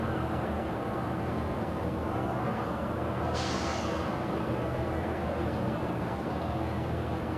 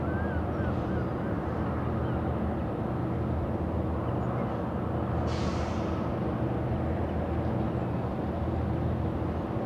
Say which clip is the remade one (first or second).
first